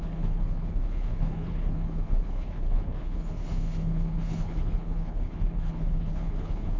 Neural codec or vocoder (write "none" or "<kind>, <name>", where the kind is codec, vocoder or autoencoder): codec, HILCodec